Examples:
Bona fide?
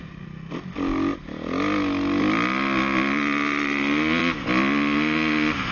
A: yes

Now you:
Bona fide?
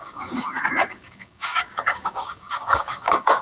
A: no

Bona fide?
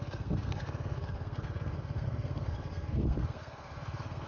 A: no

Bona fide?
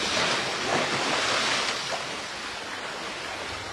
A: yes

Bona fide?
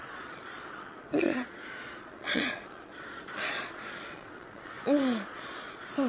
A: no